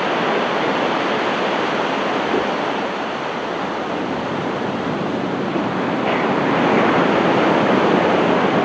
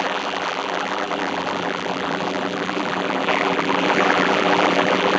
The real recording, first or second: first